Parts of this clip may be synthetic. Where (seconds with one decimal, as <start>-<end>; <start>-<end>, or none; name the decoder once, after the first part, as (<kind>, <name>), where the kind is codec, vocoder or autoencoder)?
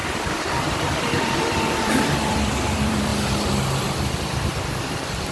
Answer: 0.0-3.1 (vocoder, BigVGAN v2); 4.0-5.3